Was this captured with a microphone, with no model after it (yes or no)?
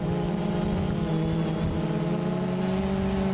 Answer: yes